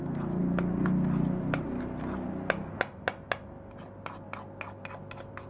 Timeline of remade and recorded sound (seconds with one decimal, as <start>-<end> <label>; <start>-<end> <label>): 0.0-5.5 recorded